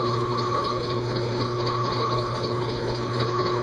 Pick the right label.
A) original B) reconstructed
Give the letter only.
B